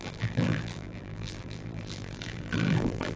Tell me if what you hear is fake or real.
fake